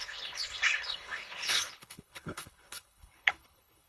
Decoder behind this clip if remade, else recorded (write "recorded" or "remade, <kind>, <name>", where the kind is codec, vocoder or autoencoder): remade, codec, HILCodec